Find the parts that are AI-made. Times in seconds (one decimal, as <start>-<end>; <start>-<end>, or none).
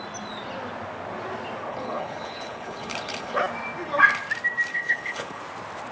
1.7-3.4; 4.7-5.4